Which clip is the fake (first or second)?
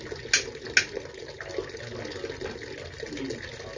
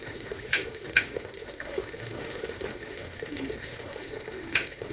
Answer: second